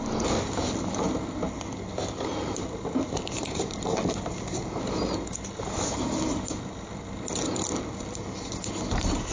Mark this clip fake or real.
real